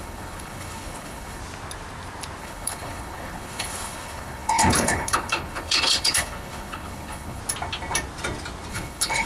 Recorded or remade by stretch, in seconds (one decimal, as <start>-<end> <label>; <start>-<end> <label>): 0.0-1.4 remade; 1.4-2.4 recorded; 2.4-7.4 remade; 7.4-8.7 recorded; 8.7-9.3 remade

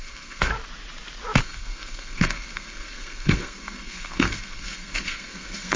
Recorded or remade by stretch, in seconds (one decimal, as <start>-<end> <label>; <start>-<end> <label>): 0.0-0.5 remade; 0.5-1.4 recorded; 1.4-5.8 remade

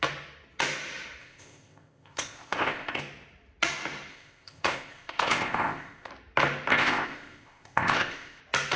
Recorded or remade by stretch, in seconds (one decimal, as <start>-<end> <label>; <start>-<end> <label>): 0.0-1.2 recorded; 1.2-3.0 remade; 3.0-4.1 recorded; 4.1-6.1 remade; 6.1-6.7 recorded; 6.7-8.4 remade; 8.4-8.8 recorded

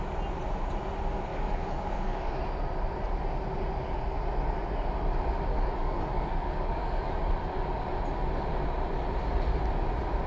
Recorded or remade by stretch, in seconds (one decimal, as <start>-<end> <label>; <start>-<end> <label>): 0.0-1.3 recorded; 1.3-2.4 remade; 2.4-5.5 recorded; 5.5-7.2 remade; 7.2-10.3 recorded